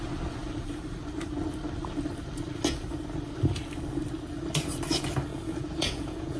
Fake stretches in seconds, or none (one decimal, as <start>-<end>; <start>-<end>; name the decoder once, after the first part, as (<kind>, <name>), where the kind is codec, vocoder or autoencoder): 5.3-6.4 (vocoder, Vocos)